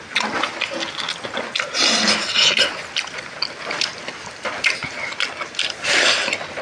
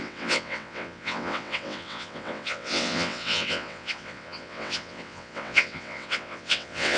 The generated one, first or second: second